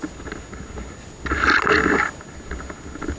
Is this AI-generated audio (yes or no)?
no